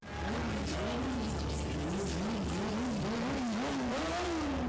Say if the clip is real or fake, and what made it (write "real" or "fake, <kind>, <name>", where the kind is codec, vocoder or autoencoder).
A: real